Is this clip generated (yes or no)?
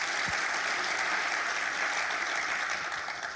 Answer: no